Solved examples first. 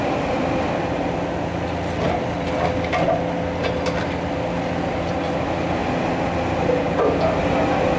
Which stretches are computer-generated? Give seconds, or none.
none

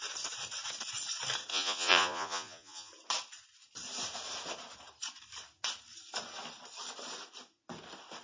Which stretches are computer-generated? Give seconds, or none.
1.5-2.9 (vocoder, Vocos)